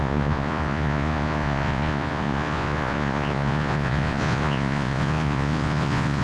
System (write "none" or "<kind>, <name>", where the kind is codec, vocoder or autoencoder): vocoder, Vocos